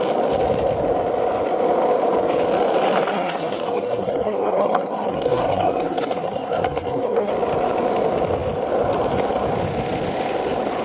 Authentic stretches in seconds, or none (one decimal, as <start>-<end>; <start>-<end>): 0.0-3.1; 7.3-10.8